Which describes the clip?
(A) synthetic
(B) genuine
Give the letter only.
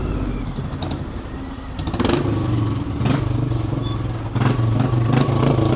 B